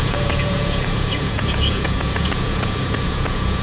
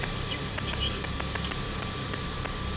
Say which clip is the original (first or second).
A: second